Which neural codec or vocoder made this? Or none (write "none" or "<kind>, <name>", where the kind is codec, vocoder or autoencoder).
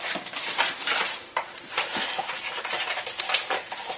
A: none